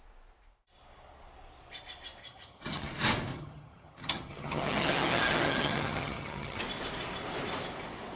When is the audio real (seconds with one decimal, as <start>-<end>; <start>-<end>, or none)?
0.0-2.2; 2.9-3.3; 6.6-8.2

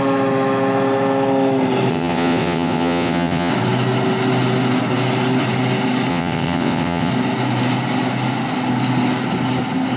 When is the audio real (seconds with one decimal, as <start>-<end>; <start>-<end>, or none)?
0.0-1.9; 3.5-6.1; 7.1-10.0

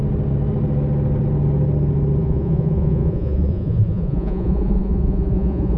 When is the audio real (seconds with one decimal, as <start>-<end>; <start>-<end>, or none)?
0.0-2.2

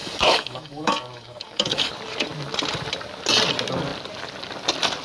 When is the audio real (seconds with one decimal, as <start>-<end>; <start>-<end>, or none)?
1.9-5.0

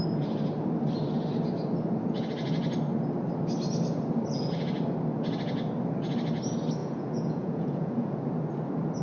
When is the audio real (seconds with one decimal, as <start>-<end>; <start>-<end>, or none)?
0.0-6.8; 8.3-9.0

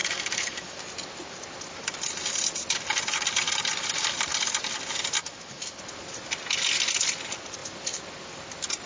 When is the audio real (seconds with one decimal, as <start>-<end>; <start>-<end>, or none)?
0.8-5.2; 5.8-8.9